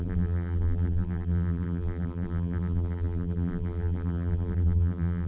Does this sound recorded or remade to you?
remade